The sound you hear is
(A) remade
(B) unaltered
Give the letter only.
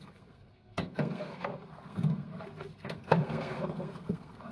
A